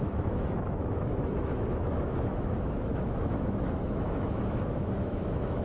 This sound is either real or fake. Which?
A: fake